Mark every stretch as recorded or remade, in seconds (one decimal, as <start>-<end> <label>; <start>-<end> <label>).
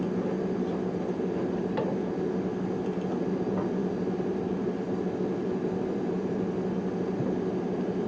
0.0-8.1 recorded